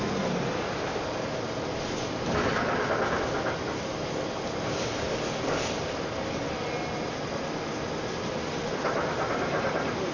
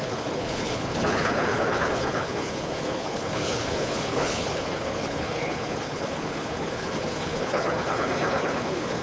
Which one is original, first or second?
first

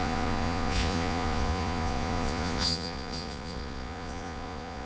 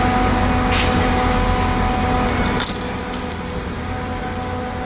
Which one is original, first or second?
second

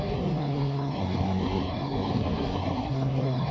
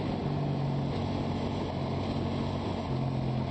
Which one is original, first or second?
second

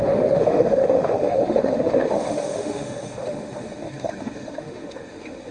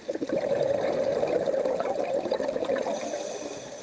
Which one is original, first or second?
second